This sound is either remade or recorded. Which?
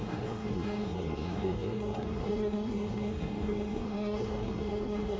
remade